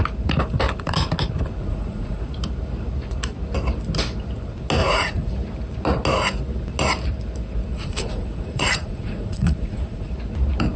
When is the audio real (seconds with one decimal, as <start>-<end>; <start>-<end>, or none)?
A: 0.0-1.6; 2.3-4.8; 5.3-7.7; 10.1-10.8